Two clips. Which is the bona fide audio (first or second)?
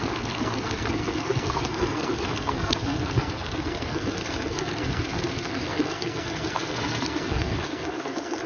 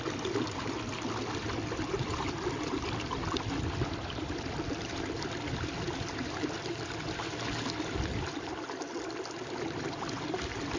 second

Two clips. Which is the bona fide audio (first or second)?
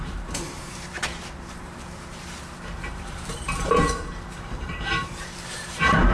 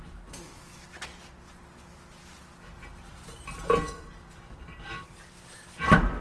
second